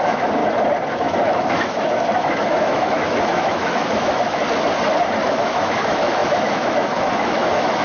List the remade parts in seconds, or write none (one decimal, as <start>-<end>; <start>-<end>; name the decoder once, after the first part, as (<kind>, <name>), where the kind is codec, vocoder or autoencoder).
0.0-0.4 (autoencoder, DAC-VAE); 0.9-4.4; 5.2-7.8